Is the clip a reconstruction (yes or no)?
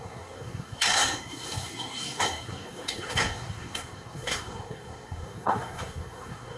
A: yes